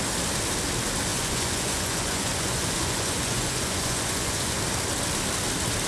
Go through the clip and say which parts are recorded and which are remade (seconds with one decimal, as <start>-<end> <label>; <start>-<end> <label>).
0.0-1.1 recorded; 1.1-4.6 remade; 4.6-5.9 recorded